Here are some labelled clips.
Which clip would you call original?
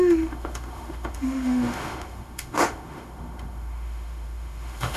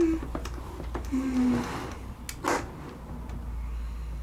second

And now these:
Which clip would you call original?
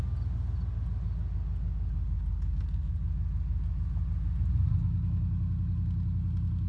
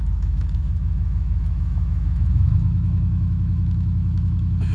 first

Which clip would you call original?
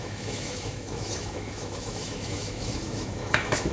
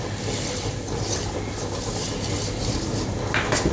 second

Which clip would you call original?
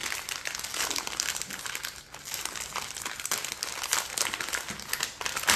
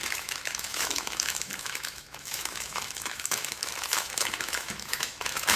first